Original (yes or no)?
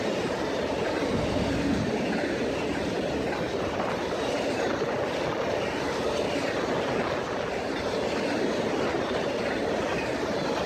yes